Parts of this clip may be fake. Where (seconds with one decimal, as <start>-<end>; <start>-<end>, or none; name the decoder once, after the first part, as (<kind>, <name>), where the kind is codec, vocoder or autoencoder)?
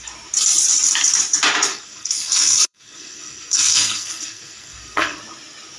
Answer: 1.7-5.2 (codec, SNAC)